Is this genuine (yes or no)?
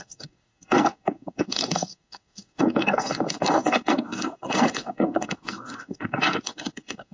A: no